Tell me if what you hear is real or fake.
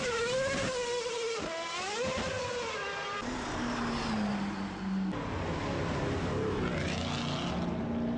real